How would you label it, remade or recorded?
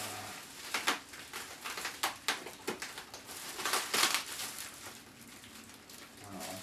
recorded